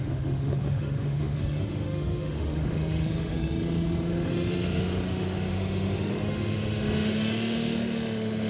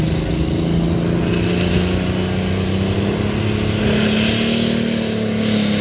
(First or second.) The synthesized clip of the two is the first